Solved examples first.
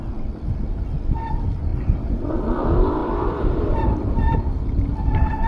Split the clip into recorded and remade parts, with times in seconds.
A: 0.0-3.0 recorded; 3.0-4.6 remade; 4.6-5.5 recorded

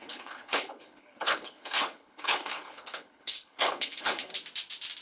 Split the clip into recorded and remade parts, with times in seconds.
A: 0.0-4.3 remade; 4.3-5.0 recorded

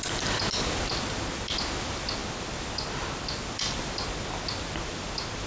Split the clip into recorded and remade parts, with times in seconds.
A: 0.0-5.5 recorded

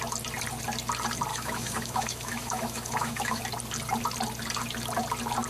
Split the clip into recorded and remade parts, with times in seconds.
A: 0.0-1.3 recorded; 1.3-3.4 remade; 3.4-5.5 recorded

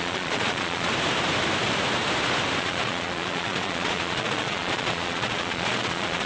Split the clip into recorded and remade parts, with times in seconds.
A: 0.0-0.9 remade; 0.9-2.6 recorded; 2.6-6.3 remade

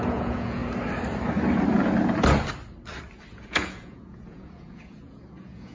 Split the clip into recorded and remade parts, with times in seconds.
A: 0.0-0.6 remade; 0.6-3.3 recorded; 3.3-5.7 remade

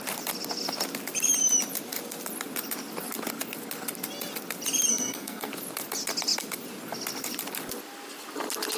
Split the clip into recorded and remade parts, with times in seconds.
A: 0.0-4.9 recorded; 4.9-5.5 remade; 5.5-8.8 recorded